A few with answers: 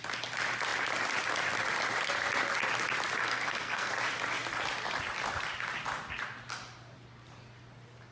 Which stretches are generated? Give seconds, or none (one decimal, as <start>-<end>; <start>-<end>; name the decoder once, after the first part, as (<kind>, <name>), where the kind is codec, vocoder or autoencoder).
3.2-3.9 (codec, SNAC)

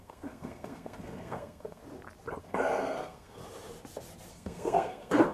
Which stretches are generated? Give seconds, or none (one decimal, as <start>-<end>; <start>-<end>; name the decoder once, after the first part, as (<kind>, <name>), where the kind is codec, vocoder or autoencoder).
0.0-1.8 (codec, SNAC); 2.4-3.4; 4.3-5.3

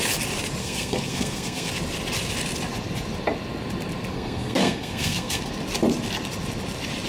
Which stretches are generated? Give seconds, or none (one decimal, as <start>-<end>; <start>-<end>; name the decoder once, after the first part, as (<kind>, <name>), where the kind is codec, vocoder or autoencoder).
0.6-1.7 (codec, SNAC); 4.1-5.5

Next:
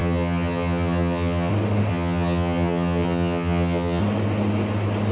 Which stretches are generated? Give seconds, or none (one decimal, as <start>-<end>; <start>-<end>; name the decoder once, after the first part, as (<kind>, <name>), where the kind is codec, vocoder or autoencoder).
0.0-1.5 (vocoder, HiFi-GAN); 1.9-4.0